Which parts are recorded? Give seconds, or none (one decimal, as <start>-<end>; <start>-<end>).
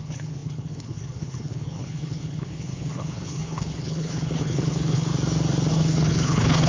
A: 5.1-5.7